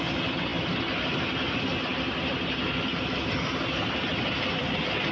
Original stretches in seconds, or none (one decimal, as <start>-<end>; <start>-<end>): 0.0-5.1